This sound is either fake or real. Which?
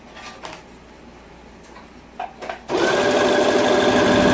real